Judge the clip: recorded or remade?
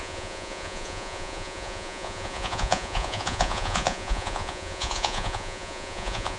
remade